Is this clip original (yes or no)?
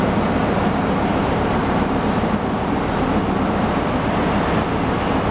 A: yes